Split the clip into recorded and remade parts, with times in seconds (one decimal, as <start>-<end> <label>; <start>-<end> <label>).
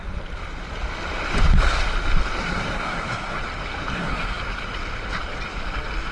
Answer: 0.0-2.4 recorded; 2.4-3.4 remade; 3.4-3.9 recorded; 3.9-4.4 remade; 4.4-6.1 recorded